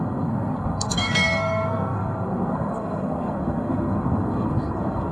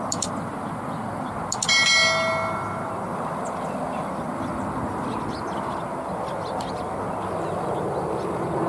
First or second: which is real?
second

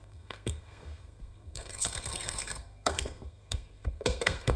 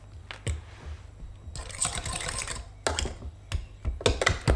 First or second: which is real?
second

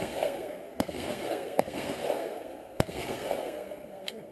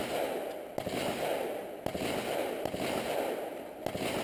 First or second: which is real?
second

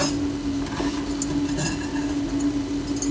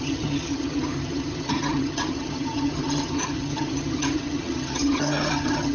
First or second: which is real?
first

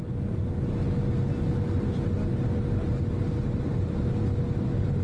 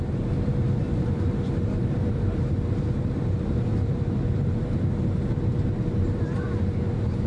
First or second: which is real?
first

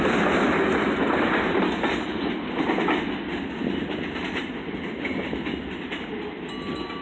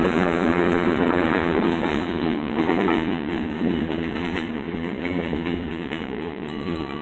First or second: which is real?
first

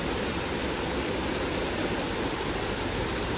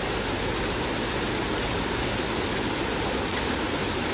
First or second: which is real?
second